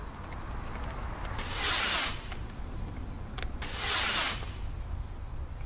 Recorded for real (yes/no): yes